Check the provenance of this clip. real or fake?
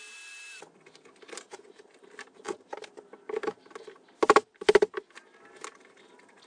real